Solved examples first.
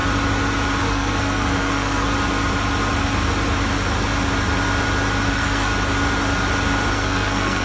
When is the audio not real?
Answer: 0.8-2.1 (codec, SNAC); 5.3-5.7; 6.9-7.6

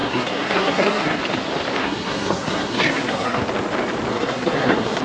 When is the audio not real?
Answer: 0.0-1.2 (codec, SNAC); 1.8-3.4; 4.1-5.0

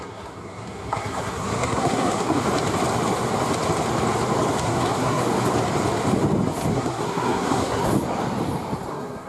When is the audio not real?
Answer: 0.0-2.4 (codec, SNAC); 4.6-5.2; 6.7-7.9; 8.9-9.3

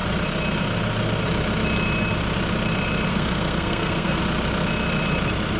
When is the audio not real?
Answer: 3.1-4.2 (codec, SNAC)

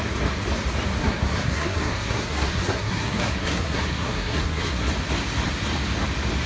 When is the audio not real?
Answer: 1.0-4.9 (codec, SNAC)

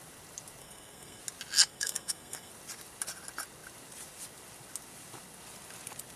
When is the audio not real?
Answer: 0.6-1.2 (codec, SNAC); 1.6-2.5